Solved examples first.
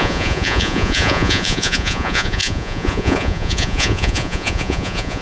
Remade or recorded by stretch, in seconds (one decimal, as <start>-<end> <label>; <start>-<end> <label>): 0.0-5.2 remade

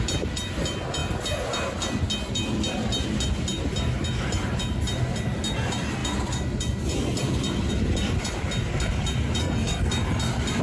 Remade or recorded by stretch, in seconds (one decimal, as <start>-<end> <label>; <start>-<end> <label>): 0.0-9.4 recorded; 9.4-9.9 remade; 9.9-10.6 recorded

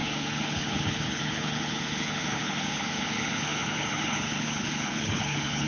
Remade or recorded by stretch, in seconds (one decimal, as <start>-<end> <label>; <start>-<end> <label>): 0.0-5.7 remade

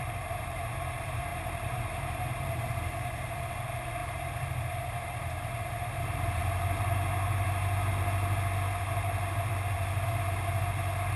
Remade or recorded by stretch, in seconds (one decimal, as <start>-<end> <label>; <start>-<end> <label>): 0.0-6.4 remade; 6.4-11.2 recorded

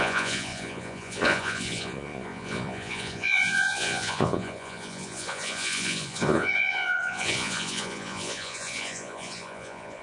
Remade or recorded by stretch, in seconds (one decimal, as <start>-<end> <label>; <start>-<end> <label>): 0.0-10.0 remade